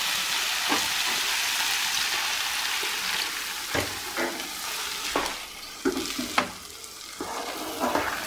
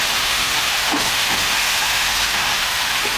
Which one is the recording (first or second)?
first